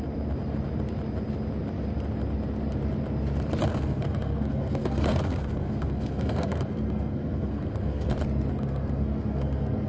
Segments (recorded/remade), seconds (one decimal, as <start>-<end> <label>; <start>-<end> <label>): 0.0-3.7 recorded; 3.7-8.1 remade; 8.1-8.5 recorded; 8.5-9.9 remade